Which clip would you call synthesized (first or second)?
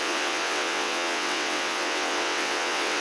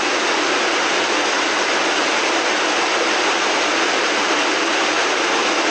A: first